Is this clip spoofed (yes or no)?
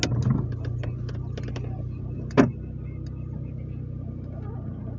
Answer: no